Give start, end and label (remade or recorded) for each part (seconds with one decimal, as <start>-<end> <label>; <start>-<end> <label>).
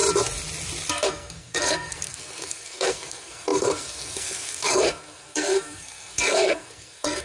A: 0.0-0.9 recorded; 0.9-7.2 remade